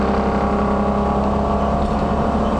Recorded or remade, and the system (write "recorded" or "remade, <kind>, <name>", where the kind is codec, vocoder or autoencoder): recorded